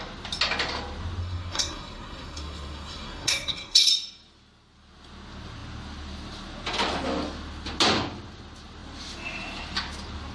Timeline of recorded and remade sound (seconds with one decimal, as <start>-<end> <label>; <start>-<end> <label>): 0.0-1.2 recorded; 1.2-3.9 remade; 3.9-10.3 recorded